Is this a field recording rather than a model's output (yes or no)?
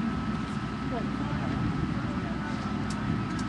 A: yes